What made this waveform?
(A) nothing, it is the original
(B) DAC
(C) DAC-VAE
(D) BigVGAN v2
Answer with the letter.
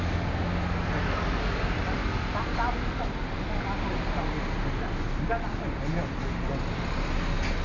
A